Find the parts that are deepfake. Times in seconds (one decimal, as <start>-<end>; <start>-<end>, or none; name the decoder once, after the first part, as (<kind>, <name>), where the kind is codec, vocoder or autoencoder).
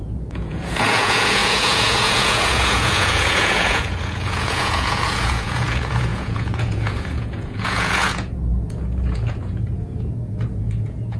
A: 0.0-11.2 (vocoder, Vocos)